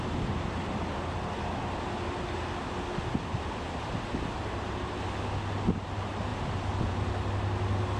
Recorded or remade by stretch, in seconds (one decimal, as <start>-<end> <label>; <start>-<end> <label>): 0.0-8.0 recorded